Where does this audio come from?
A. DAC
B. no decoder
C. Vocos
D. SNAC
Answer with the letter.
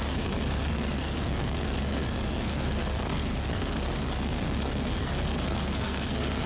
D